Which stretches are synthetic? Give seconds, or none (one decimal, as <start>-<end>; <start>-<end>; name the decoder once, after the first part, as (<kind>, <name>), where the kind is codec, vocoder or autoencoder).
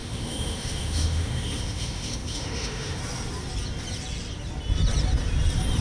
0.0-3.0 (autoencoder, DAC-VAE)